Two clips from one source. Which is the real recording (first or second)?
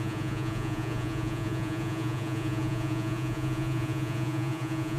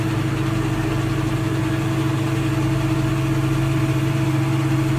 second